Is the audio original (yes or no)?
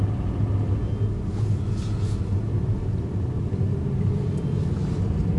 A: yes